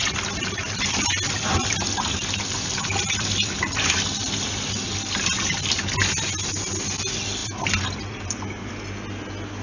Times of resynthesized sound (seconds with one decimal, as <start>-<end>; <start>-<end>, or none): 0.6-5.7; 7.4-8.7